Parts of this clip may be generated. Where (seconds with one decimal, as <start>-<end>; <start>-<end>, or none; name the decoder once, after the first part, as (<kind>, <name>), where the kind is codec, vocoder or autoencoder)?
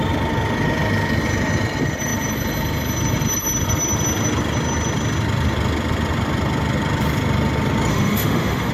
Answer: 7.9-8.7 (autoencoder, DAC-VAE)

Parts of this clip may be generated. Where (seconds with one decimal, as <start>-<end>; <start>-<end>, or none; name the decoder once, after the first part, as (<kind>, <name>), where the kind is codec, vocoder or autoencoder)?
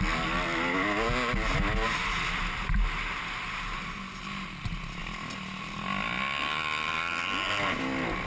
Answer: none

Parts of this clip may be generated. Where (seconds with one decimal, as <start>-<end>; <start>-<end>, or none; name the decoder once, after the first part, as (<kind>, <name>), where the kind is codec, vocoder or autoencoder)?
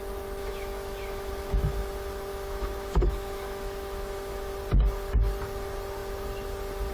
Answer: 0.4-1.3 (autoencoder, DAC-VAE); 2.3-4.5